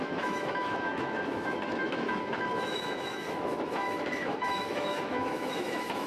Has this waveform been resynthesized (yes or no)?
yes